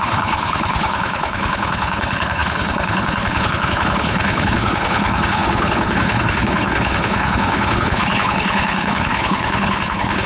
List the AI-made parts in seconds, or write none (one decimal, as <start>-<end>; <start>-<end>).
0.0-10.3